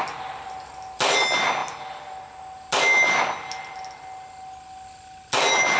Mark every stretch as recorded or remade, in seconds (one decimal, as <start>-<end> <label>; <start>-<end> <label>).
0.0-5.8 recorded